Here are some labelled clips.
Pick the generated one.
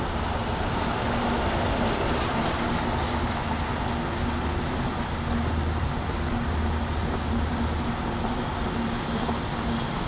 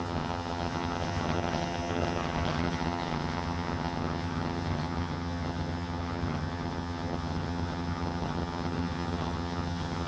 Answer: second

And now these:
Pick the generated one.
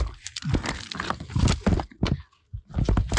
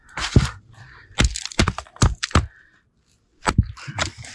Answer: second